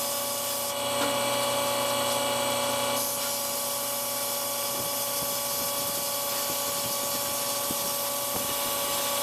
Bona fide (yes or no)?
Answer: yes